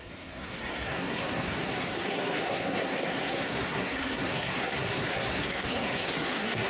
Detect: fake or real fake